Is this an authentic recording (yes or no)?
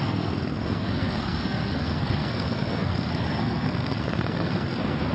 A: no